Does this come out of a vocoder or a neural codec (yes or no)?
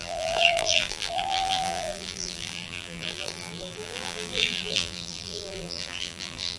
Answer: yes